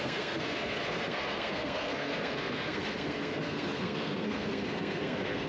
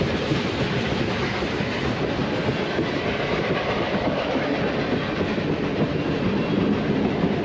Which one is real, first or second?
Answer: second